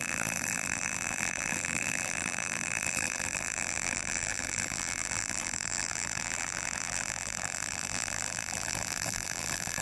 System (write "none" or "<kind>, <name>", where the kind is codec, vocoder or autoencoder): vocoder, BigVGAN v2